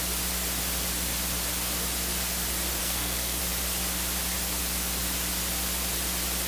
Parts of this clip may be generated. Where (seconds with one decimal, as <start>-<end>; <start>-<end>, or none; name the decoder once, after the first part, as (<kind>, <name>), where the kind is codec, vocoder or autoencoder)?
2.8-3.4 (codec, SNAC)